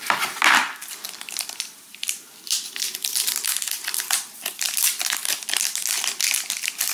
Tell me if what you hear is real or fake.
fake